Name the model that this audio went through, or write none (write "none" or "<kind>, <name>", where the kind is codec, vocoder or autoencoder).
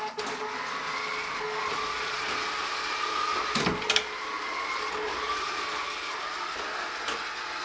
none